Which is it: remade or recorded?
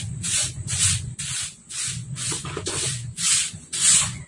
remade